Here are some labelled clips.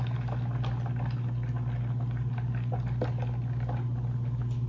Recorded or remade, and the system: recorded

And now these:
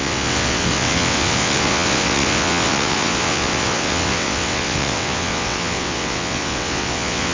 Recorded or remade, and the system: remade, vocoder, WaveNeXt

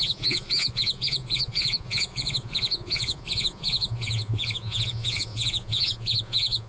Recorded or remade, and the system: remade, vocoder, Vocos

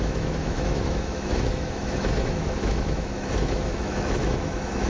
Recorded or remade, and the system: remade, autoencoder, DAC-VAE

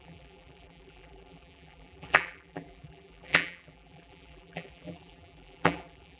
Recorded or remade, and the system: remade, vocoder, BigVGAN v2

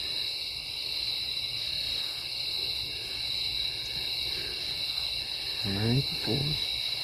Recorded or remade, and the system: recorded